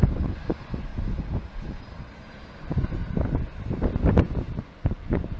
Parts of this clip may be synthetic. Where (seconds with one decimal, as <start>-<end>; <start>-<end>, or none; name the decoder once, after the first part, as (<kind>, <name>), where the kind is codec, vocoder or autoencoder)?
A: 0.0-0.9 (vocoder, Vocos); 2.6-3.0; 4.2-5.4